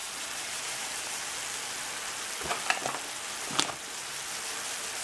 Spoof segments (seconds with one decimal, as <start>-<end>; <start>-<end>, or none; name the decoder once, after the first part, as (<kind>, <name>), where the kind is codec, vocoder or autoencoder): 0.0-1.2 (vocoder, BigVGAN v2)